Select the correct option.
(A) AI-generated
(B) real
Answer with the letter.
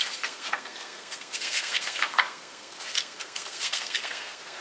A